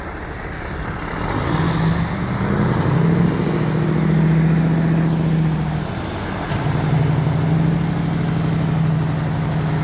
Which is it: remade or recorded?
recorded